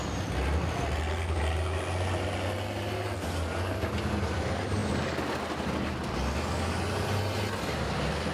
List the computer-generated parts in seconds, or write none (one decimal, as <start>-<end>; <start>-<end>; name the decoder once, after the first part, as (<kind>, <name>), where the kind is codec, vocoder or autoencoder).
none